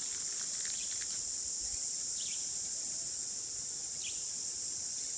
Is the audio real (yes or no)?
yes